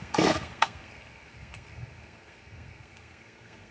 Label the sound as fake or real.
fake